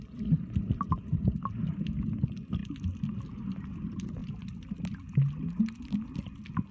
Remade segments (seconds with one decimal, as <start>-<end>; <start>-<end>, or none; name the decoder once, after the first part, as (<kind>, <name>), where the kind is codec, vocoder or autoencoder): 4.2-4.8 (vocoder, BigVGAN v2)